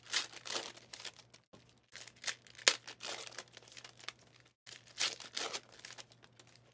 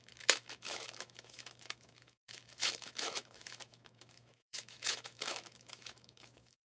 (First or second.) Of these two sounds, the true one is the first